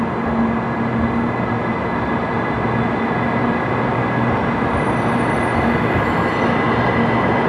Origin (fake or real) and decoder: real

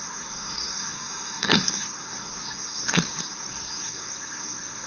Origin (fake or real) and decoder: fake, codec, SNAC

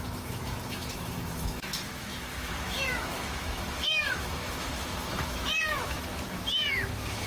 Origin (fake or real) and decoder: fake, autoencoder, DAC-VAE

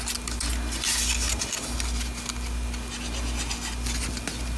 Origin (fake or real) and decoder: real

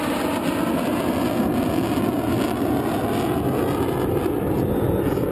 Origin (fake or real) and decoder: real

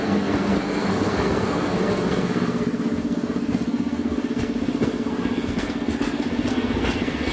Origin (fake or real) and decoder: fake, codec, SNAC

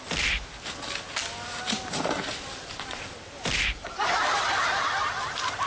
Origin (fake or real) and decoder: fake, vocoder, BigVGAN v2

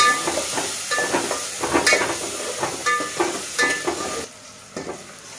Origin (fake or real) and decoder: real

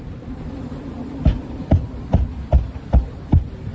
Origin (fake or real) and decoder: fake, vocoder, BigVGAN v2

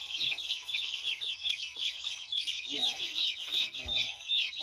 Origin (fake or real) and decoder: fake, codec, SNAC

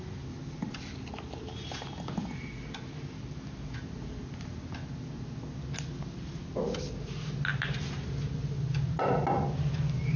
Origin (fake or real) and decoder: real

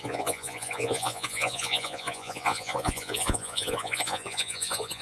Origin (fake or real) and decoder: fake, vocoder, Vocos